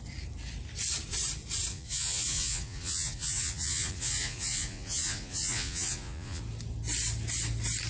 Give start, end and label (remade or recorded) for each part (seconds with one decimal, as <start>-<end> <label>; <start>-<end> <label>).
0.0-1.7 recorded; 1.7-6.4 remade; 6.4-7.9 recorded

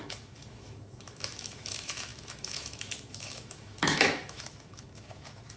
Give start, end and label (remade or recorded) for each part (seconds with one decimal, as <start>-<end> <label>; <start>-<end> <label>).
0.0-5.6 remade

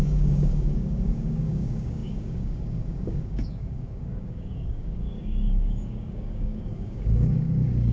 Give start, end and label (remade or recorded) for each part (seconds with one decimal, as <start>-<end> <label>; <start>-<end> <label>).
0.0-7.9 remade

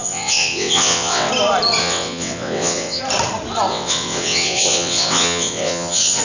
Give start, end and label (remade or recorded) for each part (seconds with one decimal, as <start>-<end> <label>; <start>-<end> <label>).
0.0-1.3 remade; 1.3-1.8 recorded; 1.8-3.0 remade; 3.0-3.7 recorded; 3.7-6.2 remade

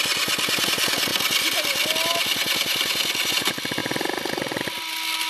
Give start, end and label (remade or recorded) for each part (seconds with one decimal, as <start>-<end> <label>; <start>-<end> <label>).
0.0-5.3 recorded

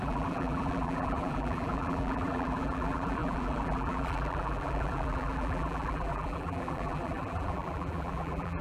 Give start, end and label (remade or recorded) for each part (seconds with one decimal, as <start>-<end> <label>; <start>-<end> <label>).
0.0-8.6 remade

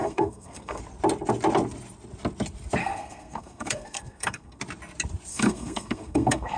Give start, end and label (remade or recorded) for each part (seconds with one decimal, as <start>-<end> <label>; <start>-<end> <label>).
0.0-0.8 remade; 0.8-2.8 recorded; 2.8-4.6 remade; 4.6-5.3 recorded; 5.3-6.6 remade

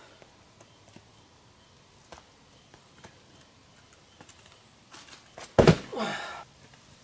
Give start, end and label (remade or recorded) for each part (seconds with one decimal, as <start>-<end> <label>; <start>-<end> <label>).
0.0-5.9 recorded; 5.9-7.0 remade